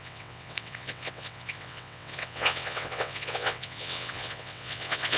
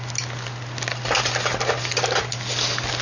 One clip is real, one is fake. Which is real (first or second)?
second